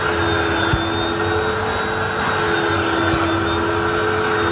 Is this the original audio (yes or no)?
yes